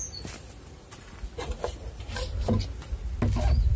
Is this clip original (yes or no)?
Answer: yes